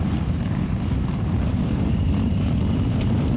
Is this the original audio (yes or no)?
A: no